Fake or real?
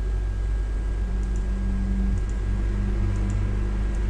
real